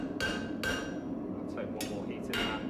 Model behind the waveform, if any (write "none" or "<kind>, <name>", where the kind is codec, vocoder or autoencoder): none